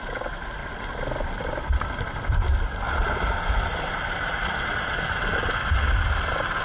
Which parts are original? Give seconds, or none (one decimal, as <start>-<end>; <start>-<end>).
0.0-3.7; 4.3-6.6